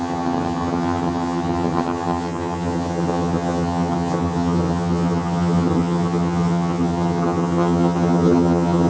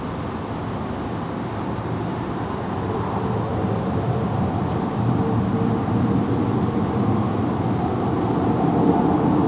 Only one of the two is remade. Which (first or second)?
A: first